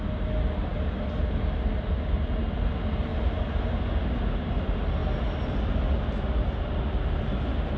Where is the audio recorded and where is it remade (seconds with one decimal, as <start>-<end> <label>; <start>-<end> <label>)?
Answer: 0.0-3.1 recorded; 3.1-3.8 remade; 3.8-7.8 recorded